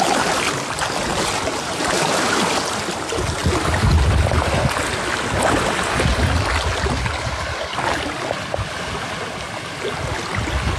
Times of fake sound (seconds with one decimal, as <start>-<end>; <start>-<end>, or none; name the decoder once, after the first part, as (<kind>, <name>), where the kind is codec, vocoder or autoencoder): 1.1-2.1 (vocoder, BigVGAN v2)